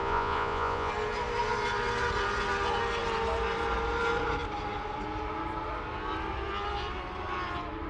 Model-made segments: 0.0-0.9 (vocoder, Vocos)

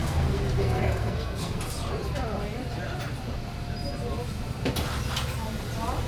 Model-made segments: 0.0-1.6 (codec, SNAC)

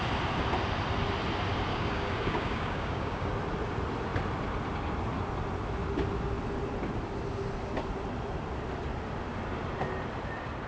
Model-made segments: 1.7-3.3 (codec, DAC)

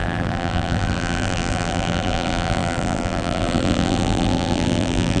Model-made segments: 0.0-5.2 (vocoder, BigVGAN v2)